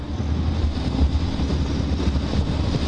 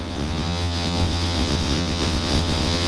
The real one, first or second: first